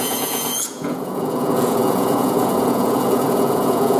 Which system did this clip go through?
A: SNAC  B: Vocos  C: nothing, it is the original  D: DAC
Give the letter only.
B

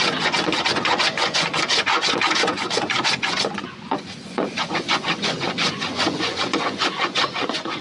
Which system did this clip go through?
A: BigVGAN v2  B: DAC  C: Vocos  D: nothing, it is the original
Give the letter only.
C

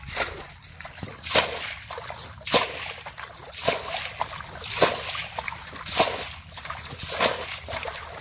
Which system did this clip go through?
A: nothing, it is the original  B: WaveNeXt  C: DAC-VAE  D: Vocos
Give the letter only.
A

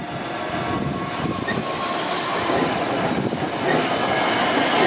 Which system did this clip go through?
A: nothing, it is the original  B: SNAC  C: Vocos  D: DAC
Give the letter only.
A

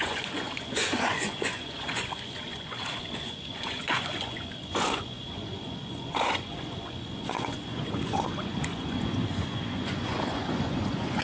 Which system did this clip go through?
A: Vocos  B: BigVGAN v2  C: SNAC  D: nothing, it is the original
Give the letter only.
A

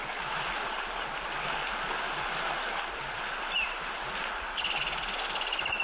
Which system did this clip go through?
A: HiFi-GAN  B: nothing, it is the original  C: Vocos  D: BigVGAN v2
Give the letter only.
B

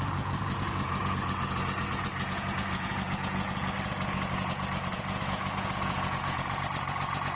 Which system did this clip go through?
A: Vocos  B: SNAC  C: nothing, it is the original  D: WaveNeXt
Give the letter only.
A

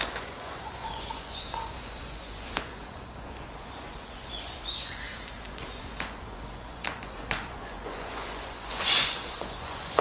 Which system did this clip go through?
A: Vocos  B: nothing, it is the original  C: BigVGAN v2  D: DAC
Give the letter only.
A